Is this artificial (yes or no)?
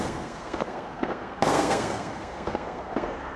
yes